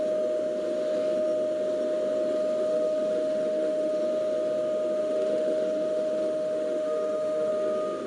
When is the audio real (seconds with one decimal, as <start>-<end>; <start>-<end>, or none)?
0.0-2.7; 4.0-5.0; 7.5-8.1